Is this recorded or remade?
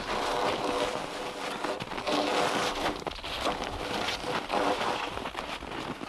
recorded